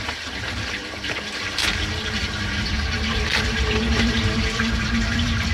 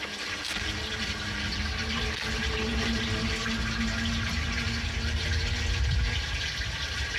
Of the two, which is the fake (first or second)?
first